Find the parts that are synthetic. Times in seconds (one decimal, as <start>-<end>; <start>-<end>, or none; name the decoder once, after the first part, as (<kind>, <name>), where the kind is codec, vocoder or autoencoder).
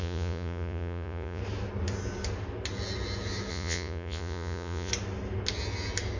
0.0-1.4 (vocoder, Vocos); 3.5-4.9